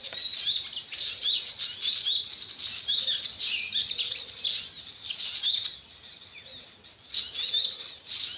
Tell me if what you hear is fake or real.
real